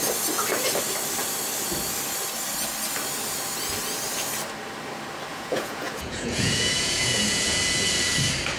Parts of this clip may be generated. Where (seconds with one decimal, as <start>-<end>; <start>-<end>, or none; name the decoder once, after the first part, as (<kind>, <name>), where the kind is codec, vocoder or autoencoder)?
5.3-7.6 (vocoder, Vocos)

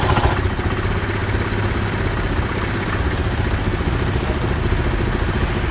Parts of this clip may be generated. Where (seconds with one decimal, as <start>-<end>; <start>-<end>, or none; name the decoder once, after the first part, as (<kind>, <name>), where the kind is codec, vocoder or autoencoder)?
none

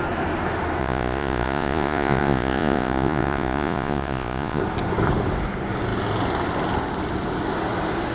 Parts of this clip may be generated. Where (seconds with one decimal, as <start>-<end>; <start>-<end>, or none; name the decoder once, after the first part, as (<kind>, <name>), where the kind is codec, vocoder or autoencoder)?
0.8-4.6 (vocoder, Vocos)